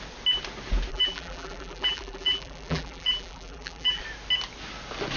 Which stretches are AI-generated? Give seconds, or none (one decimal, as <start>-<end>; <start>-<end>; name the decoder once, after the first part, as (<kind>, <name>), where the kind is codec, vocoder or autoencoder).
0.9-4.0 (vocoder, BigVGAN v2)